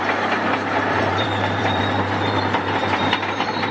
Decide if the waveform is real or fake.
fake